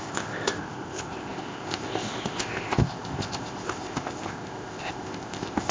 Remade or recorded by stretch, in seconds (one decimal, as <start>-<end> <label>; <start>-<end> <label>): 0.0-5.7 remade

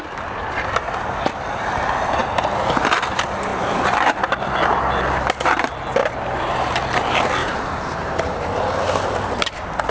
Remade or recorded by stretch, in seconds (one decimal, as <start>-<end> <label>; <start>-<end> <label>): 0.0-2.2 recorded; 2.2-2.8 remade; 2.8-3.5 recorded; 3.5-4.2 remade; 4.2-6.0 recorded; 6.0-6.7 remade; 6.7-7.4 recorded; 7.4-8.2 remade; 8.2-9.9 recorded

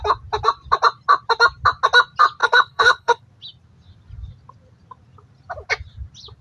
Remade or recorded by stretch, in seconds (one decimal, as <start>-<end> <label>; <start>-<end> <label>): 0.0-2.4 recorded; 2.4-3.2 remade; 3.2-6.4 recorded

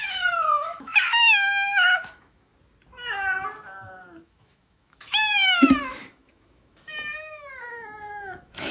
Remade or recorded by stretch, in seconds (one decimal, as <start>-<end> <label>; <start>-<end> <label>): 0.0-2.5 remade; 2.5-4.0 recorded; 4.0-8.7 remade

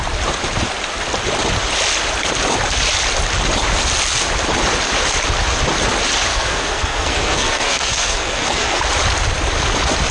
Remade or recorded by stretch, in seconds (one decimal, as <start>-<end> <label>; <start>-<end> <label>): 0.0-6.3 recorded; 6.3-8.8 remade; 8.8-10.1 recorded

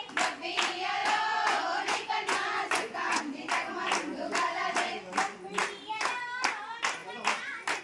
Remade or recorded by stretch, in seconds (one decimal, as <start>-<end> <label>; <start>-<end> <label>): 0.0-1.0 recorded; 1.0-3.2 remade; 3.2-7.8 recorded

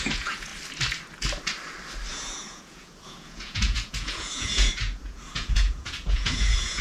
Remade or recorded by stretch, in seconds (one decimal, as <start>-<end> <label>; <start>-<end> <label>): 0.0-0.5 remade; 0.5-2.1 recorded; 2.1-6.8 remade